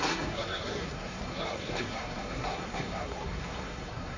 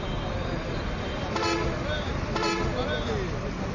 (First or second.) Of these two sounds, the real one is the second